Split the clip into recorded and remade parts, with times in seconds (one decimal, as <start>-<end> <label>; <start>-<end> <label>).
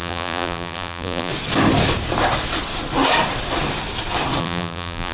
0.0-1.3 remade; 1.3-4.4 recorded; 4.4-5.1 remade